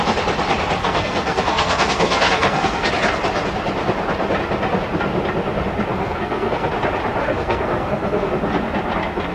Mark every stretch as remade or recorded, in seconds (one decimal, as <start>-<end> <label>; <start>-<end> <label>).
0.0-0.8 recorded; 0.8-2.9 remade; 2.9-5.9 recorded; 5.9-6.7 remade; 6.7-7.2 recorded; 7.2-8.3 remade; 8.3-9.3 recorded